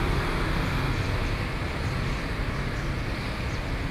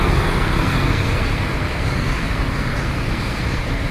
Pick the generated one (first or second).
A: second